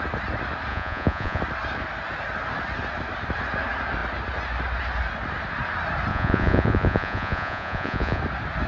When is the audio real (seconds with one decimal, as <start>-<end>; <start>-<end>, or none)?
0.0-0.7; 1.4-6.1; 8.2-8.7